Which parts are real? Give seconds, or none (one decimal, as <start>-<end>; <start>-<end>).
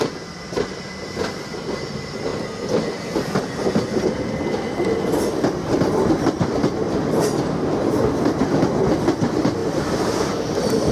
none